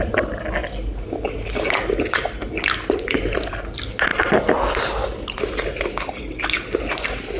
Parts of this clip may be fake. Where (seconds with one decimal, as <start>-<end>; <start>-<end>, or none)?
none